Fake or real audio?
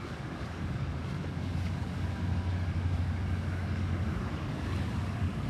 fake